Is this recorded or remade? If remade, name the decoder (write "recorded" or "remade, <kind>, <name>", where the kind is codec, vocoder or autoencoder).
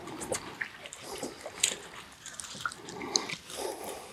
recorded